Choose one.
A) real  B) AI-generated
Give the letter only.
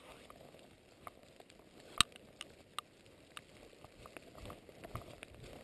A